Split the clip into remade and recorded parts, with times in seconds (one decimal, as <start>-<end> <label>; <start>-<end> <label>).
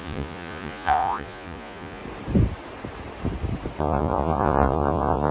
0.0-2.0 remade; 2.0-3.8 recorded; 3.8-5.3 remade